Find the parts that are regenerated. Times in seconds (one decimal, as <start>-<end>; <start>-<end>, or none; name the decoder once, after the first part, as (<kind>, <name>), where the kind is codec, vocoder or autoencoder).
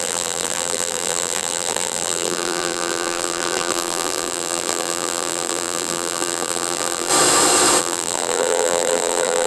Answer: 0.0-7.1 (vocoder, BigVGAN v2); 7.8-9.5